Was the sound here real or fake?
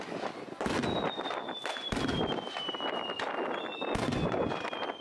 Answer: real